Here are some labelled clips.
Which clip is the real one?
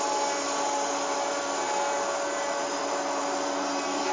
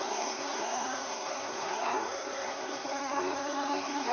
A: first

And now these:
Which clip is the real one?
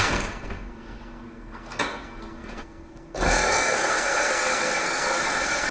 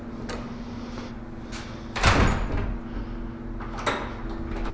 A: second